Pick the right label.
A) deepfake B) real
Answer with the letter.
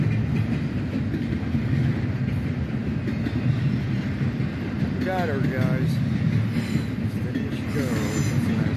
B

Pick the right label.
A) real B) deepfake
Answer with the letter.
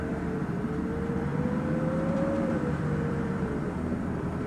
B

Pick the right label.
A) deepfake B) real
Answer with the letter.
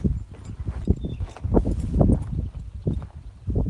B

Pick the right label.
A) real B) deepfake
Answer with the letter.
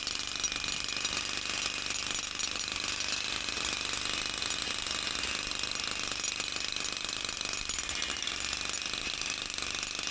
A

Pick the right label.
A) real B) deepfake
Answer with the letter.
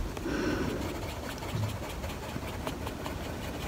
A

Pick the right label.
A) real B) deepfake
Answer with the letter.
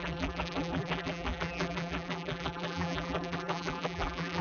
B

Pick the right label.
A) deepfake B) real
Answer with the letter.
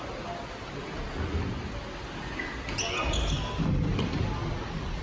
B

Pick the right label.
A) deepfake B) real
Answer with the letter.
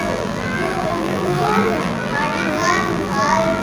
A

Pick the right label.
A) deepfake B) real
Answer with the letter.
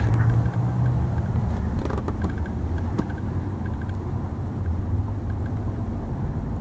A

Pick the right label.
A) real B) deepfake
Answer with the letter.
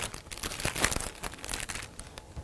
A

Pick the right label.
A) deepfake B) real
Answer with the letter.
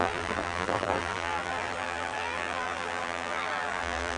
A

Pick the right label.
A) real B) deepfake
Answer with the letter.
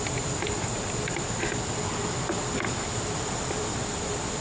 B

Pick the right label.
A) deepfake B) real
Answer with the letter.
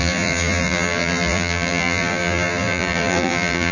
A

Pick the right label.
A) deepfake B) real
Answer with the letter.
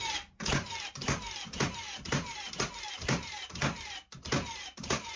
A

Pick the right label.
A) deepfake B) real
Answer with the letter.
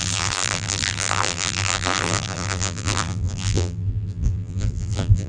A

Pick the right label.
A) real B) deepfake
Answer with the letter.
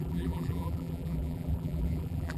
B